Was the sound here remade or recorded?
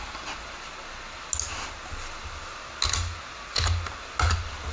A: recorded